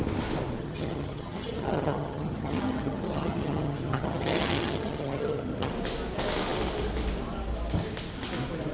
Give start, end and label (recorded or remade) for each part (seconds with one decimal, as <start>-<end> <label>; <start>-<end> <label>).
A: 0.0-0.6 recorded; 0.6-5.7 remade; 5.7-8.7 recorded